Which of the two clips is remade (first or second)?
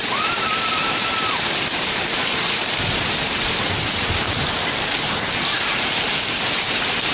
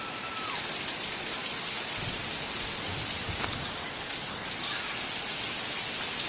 first